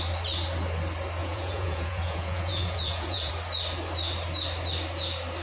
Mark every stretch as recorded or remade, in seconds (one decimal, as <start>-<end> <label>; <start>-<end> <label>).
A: 0.0-1.2 recorded; 1.2-3.3 remade; 3.3-5.4 recorded